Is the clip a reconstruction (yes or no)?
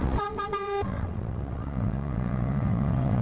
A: yes